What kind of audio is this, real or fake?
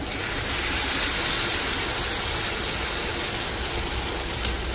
real